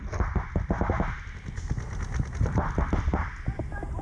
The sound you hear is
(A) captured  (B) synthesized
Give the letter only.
A